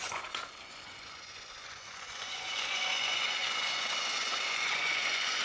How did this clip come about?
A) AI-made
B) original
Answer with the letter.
A